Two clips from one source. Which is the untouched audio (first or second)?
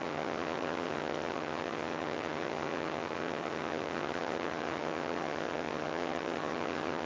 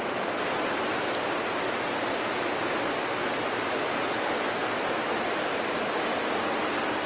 second